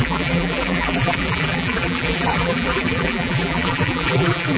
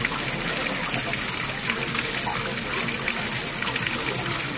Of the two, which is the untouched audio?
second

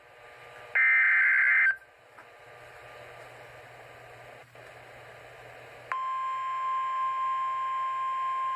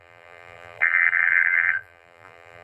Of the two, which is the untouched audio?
first